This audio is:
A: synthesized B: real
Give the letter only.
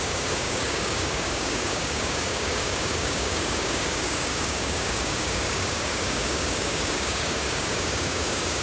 A